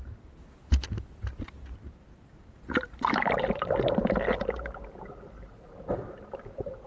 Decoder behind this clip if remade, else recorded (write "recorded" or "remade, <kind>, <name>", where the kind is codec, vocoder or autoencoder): recorded